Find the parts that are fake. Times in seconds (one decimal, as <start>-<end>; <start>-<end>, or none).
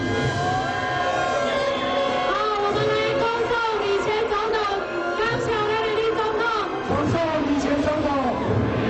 3.1-5.0; 6.7-8.9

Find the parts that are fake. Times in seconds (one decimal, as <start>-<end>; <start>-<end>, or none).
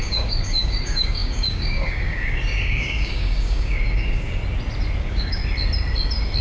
0.0-4.4; 5.0-5.4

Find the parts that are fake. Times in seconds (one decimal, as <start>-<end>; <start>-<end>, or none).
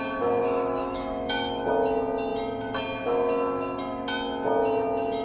0.4-1.7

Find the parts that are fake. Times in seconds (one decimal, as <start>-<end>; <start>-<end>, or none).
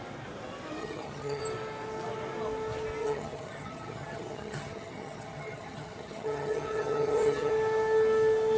0.8-1.4; 3.0-7.5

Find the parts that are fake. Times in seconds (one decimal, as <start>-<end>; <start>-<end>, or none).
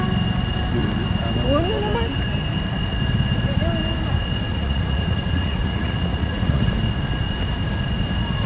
4.5-6.7